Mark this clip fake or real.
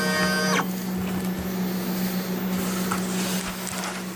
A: real